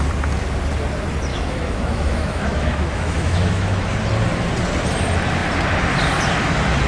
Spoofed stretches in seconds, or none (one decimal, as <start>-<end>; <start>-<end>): 1.3-3.9